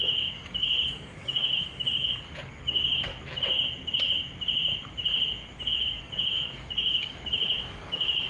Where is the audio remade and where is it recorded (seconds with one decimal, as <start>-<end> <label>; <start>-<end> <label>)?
0.0-3.1 remade; 3.1-5.7 recorded; 5.7-8.3 remade